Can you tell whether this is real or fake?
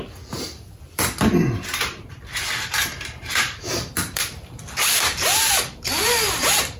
fake